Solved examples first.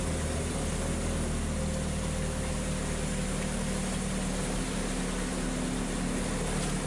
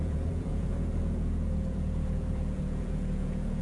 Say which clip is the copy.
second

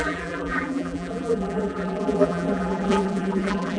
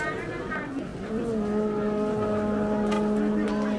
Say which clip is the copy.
first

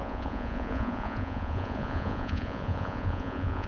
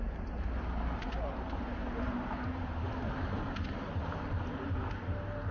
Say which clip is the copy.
first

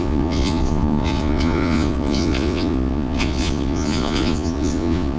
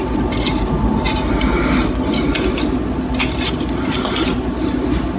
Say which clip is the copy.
first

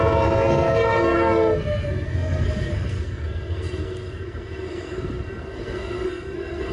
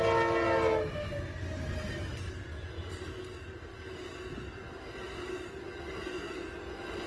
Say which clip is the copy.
first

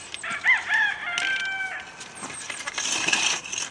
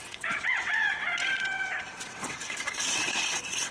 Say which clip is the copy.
second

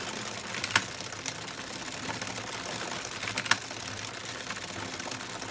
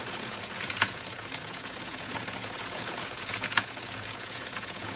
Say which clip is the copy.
second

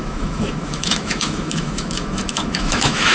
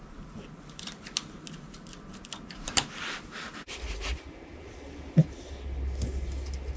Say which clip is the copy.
first